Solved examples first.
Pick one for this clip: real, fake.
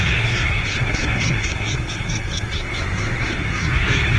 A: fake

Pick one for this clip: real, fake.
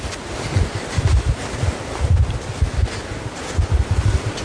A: real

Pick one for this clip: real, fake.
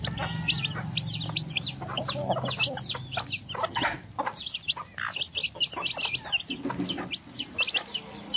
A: real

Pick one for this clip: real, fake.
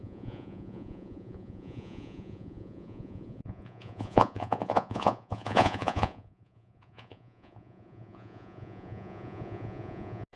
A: fake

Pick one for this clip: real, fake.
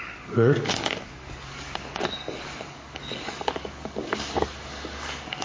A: fake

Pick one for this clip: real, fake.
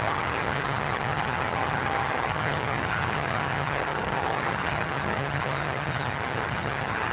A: fake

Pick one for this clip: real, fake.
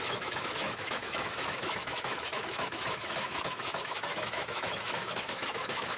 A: fake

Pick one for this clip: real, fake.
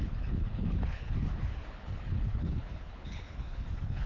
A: fake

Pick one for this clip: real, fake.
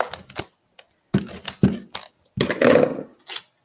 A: real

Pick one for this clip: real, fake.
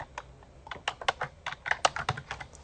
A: real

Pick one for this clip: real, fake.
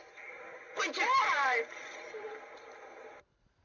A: fake